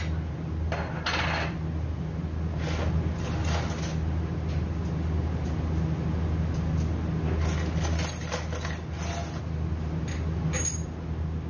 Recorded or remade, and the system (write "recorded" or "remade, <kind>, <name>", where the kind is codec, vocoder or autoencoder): recorded